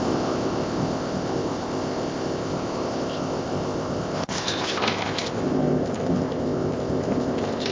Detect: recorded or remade remade